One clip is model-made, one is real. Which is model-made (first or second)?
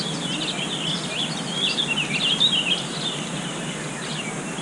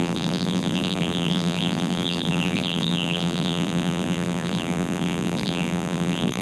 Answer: second